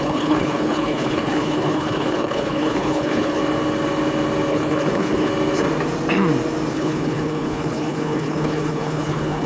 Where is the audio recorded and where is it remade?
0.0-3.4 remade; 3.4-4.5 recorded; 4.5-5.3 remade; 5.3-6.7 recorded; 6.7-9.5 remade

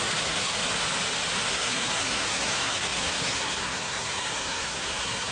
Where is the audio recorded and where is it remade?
0.0-0.6 remade; 0.6-1.5 recorded; 1.5-5.3 remade

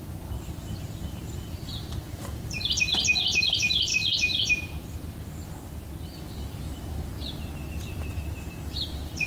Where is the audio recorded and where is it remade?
0.0-3.9 remade; 3.9-6.6 recorded; 6.6-7.1 remade; 7.1-8.5 recorded; 8.5-9.3 remade

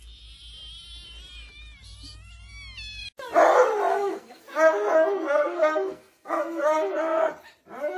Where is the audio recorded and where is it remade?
0.0-3.9 recorded; 3.9-7.3 remade; 7.3-8.0 recorded